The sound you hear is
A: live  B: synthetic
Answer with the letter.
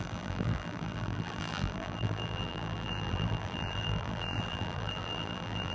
B